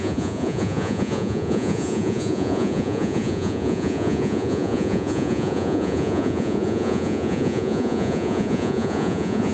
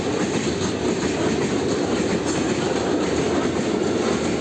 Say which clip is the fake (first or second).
first